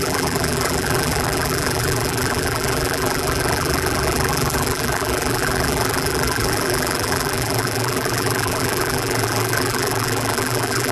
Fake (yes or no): yes